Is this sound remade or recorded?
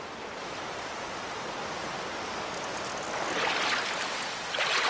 recorded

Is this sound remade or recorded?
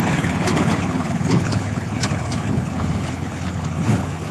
remade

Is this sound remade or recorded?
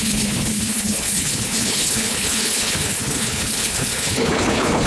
remade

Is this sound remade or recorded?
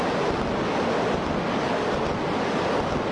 recorded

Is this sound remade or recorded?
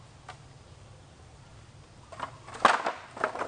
recorded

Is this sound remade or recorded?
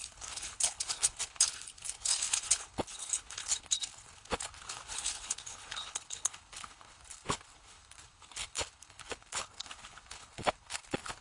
remade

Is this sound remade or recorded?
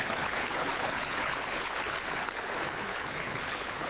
remade